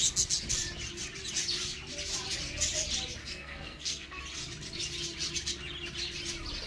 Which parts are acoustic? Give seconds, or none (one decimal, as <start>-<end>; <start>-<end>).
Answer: 0.0-3.2; 4.2-6.7